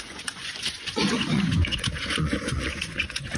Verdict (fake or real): fake